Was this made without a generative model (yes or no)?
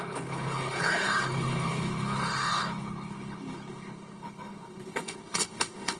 no